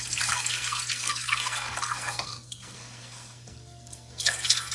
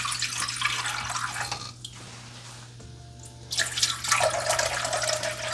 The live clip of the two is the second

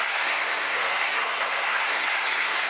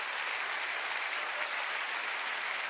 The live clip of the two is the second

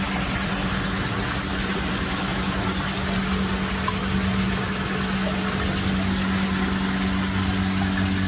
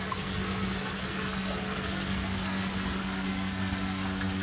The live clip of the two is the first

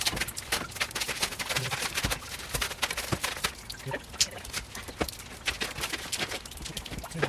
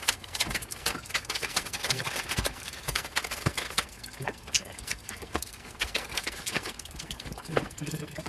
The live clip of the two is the first